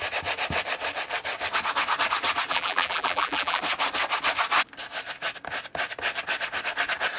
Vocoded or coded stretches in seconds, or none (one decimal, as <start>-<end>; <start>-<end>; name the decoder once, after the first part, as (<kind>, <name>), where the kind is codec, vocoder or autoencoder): 2.5-3.6 (vocoder, BigVGAN v2)